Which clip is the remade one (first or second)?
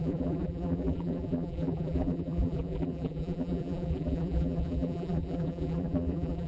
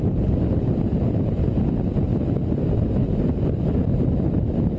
first